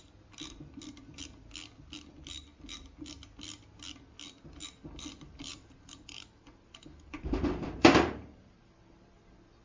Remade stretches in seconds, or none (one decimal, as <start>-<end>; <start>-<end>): 5.1-9.2